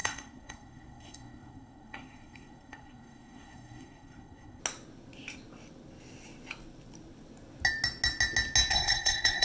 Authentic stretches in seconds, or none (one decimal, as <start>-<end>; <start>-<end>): 4.6-8.7